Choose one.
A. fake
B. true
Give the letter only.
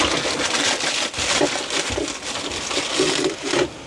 B